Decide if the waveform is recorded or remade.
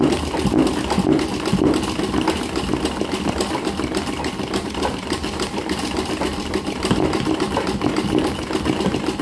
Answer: recorded